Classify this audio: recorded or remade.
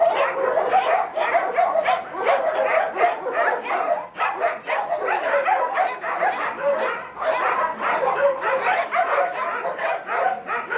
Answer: recorded